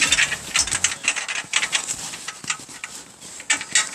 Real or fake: real